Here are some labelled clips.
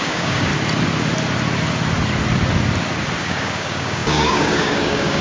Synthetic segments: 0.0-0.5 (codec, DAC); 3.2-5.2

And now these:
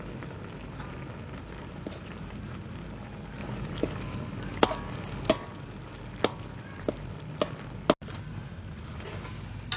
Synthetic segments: 3.4-5.3 (codec, DAC)

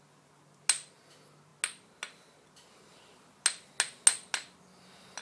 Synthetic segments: none

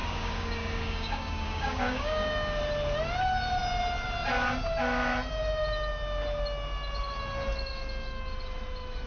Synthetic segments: 0.0-2.6 (codec, DAC)

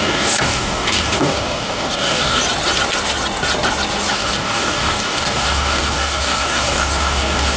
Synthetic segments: 0.0-2.4 (codec, DAC); 4.1-7.6

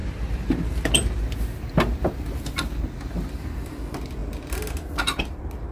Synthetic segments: none

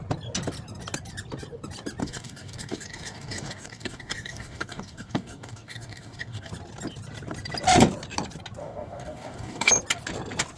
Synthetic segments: 2.0-6.5 (codec, DAC); 8.6-9.7

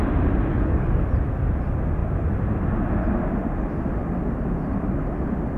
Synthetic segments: 0.5-1.1 (codec, DAC)